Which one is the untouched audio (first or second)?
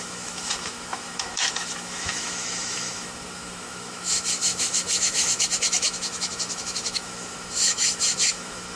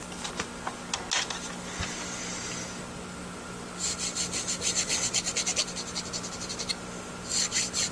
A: second